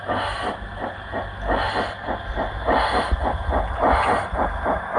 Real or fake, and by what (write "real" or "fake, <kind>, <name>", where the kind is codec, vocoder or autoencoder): real